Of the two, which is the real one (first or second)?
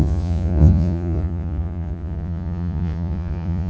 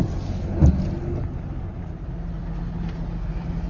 second